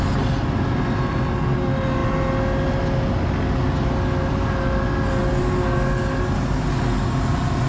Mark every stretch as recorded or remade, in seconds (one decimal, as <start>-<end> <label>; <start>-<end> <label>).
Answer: 0.0-7.7 recorded